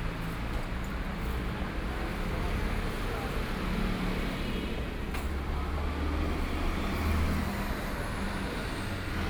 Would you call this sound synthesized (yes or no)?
no